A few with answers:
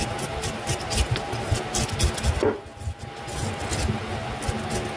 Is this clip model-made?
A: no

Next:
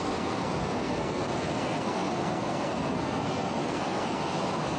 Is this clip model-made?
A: yes